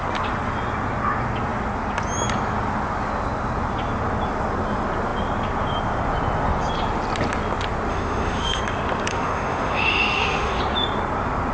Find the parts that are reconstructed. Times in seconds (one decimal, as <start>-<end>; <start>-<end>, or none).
7.9-8.6; 9.1-10.6